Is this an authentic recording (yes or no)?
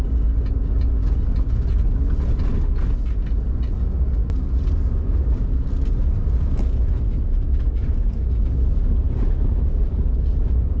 yes